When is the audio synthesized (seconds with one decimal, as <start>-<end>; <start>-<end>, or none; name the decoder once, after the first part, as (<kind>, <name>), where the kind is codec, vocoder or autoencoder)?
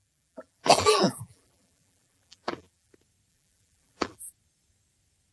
0.0-2.9 (vocoder, BigVGAN v2); 3.3-4.3